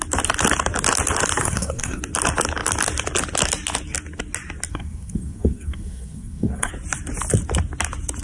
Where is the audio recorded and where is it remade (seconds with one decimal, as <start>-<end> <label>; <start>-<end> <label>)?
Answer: 0.0-1.4 recorded; 1.4-2.0 remade; 2.0-4.7 recorded; 4.7-6.7 remade; 6.7-8.2 recorded